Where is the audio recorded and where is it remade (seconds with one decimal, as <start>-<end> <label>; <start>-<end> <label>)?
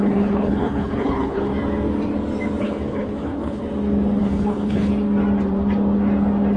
0.0-1.5 remade; 1.5-2.6 recorded; 2.6-3.6 remade; 3.6-4.2 recorded; 4.2-4.9 remade; 4.9-6.6 recorded